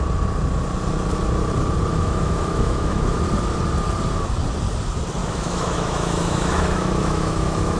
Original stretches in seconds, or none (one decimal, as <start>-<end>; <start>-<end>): 0.0-1.9; 3.2-5.2